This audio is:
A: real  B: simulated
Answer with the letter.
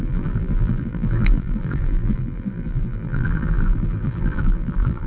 B